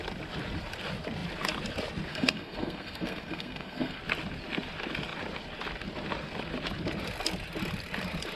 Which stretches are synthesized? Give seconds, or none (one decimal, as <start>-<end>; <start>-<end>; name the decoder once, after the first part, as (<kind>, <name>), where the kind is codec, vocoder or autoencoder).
2.1-4.0 (codec, SNAC)